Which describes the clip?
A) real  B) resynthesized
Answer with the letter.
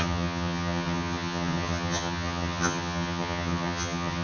B